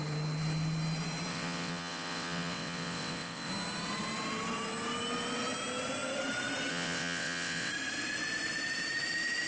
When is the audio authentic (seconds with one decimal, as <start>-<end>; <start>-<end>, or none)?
0.0-1.3; 3.5-6.7; 7.7-9.5